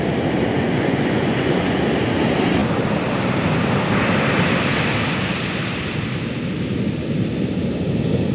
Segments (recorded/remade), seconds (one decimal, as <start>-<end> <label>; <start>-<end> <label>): 0.0-0.5 recorded; 0.5-1.8 remade; 1.8-8.3 recorded